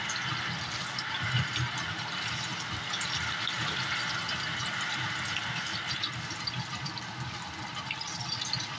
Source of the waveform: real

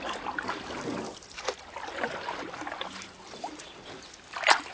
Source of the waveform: real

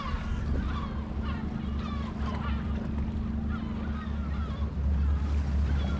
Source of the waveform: real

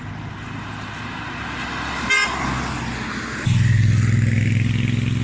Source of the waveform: real